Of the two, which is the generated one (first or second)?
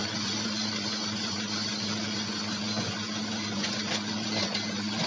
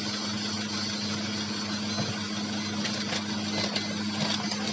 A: first